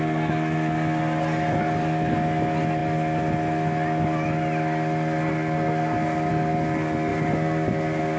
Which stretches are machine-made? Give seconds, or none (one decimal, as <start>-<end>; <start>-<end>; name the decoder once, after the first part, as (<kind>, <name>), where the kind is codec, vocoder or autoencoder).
none